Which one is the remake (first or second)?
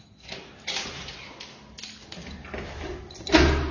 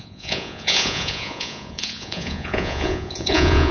second